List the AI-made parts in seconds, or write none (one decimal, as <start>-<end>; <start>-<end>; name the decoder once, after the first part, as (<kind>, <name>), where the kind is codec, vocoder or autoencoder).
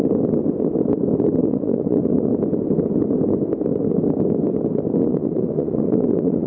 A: 1.4-2.3 (vocoder, Vocos); 5.1-6.5